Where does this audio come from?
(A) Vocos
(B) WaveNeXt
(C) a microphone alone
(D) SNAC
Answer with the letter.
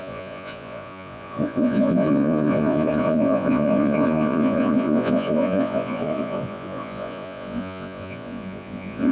A